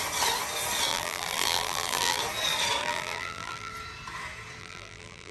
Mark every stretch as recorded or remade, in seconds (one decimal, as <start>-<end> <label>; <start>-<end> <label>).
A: 0.0-0.9 recorded; 0.9-2.2 remade; 2.2-2.8 recorded; 2.8-3.7 remade; 3.7-4.6 recorded; 4.6-5.3 remade